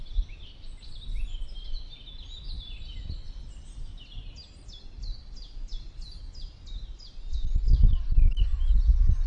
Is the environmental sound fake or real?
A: real